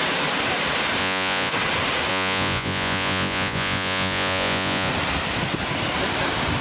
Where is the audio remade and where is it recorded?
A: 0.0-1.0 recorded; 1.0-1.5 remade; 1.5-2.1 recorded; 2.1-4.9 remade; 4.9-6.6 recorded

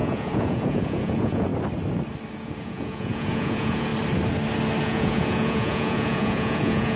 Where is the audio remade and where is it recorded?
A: 0.0-1.5 remade; 1.5-2.3 recorded; 2.3-3.9 remade; 3.9-4.8 recorded; 4.8-7.0 remade

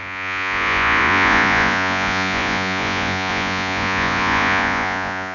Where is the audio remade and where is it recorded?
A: 0.0-5.3 remade

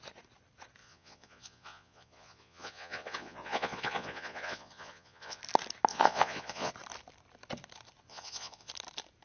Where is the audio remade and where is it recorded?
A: 0.0-0.8 recorded; 0.8-5.4 remade; 5.4-5.9 recorded; 5.9-6.7 remade; 6.7-8.1 recorded; 8.1-8.7 remade; 8.7-9.2 recorded